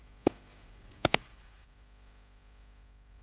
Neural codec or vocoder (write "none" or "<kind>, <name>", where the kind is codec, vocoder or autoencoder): none